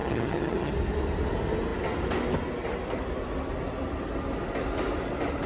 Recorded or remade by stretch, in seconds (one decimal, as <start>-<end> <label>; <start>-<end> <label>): 0.0-0.7 remade; 0.7-5.5 recorded